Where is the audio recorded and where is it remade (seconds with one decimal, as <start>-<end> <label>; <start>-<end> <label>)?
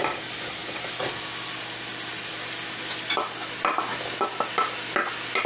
0.0-5.5 recorded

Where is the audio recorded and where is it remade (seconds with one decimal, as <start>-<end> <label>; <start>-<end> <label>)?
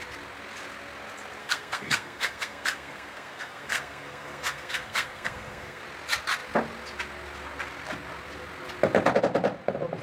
0.0-1.4 recorded; 1.4-5.8 remade; 5.8-10.0 recorded